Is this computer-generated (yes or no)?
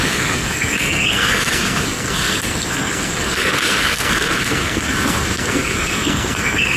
yes